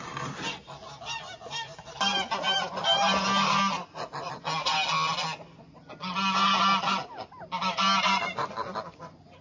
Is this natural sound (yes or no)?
yes